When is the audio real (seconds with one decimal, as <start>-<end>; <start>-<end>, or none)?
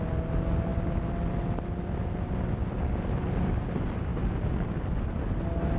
0.0-5.8